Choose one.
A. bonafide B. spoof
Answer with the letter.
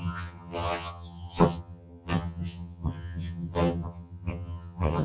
B